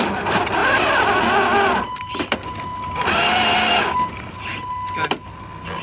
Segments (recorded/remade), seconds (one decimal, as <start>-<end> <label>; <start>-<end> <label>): 0.0-5.8 recorded